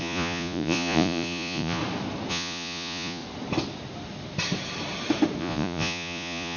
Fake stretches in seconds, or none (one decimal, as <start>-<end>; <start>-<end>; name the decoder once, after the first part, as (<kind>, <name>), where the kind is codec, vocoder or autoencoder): 0.0-1.8 (vocoder, Vocos); 2.3-3.2; 5.4-6.6

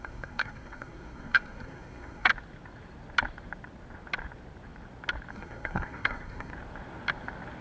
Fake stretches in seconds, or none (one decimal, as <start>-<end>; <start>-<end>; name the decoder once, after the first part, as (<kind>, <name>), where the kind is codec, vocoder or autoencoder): 0.0-2.3 (codec, SNAC); 5.3-6.5

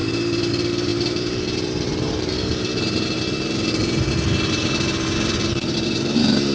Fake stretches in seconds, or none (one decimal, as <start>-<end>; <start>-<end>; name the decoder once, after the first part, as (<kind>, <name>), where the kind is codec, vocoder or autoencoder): 0.0-6.5 (vocoder, BigVGAN v2)

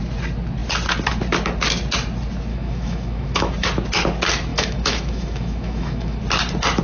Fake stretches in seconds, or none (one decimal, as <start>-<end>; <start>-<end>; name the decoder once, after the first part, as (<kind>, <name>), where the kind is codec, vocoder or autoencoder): 2.5-3.5 (autoencoder, DAC-VAE); 4.5-6.2

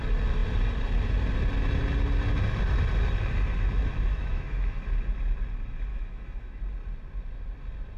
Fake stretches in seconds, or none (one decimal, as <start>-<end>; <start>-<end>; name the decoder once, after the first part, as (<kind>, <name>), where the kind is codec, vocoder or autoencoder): 4.1-4.8 (autoencoder, DAC-VAE); 5.9-6.6